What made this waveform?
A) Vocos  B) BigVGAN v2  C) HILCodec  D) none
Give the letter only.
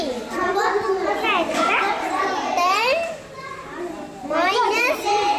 B